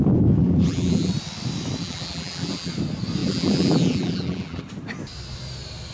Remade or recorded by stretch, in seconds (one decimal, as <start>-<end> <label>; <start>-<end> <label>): 0.0-0.4 recorded; 0.4-1.1 remade; 1.1-1.8 recorded; 1.8-2.7 remade; 2.7-3.2 recorded; 3.2-4.6 remade; 4.6-5.9 recorded